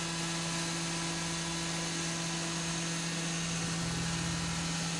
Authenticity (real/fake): real